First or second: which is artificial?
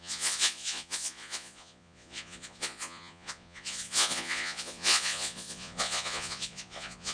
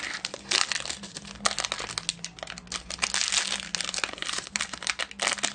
first